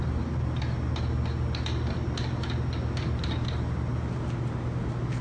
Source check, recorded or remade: recorded